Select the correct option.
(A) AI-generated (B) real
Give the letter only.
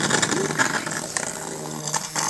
B